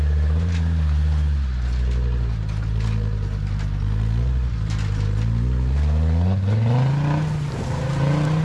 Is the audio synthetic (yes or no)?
no